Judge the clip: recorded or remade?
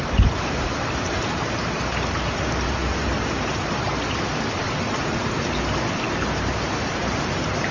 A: remade